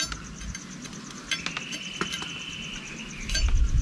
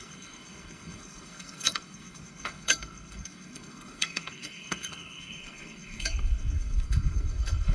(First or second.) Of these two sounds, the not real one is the second